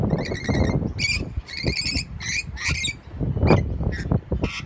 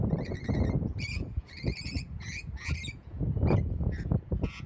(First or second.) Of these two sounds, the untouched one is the first